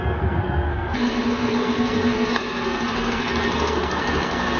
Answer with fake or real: fake